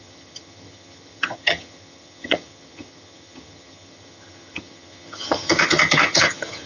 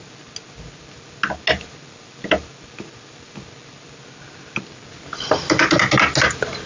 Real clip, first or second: second